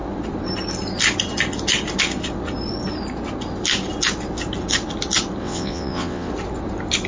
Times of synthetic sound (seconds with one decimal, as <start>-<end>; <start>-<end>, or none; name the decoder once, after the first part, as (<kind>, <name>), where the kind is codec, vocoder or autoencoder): 5.4-6.3 (vocoder, WaveNeXt)